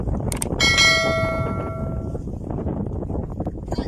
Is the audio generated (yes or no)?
no